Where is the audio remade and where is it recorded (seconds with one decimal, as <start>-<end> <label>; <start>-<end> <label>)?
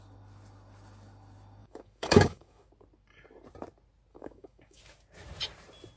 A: 0.0-1.6 recorded; 1.6-2.7 remade; 2.7-4.1 recorded; 4.1-4.8 remade; 4.8-6.0 recorded